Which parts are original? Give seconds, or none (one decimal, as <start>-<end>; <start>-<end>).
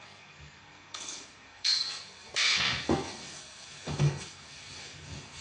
none